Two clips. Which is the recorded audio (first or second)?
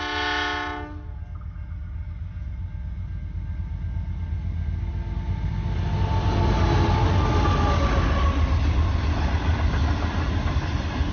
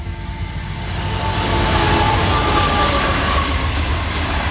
first